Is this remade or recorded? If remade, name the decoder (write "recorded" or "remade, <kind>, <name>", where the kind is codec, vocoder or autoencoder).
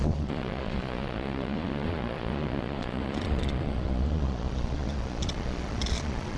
remade, vocoder, Vocos